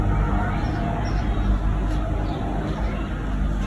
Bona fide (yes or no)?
yes